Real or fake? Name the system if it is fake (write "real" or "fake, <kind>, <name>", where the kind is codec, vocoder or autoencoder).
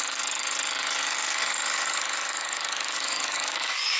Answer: fake, codec, DAC